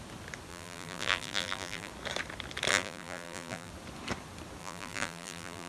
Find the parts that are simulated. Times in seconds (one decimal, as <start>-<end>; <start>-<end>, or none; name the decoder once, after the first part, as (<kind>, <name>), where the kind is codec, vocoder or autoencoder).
0.5-1.9 (vocoder, BigVGAN v2); 2.7-3.7; 4.6-5.7